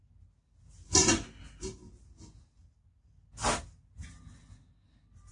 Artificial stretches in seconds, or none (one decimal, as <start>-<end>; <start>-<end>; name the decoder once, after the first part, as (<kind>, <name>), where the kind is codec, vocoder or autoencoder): none